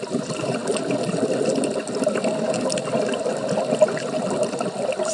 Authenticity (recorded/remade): recorded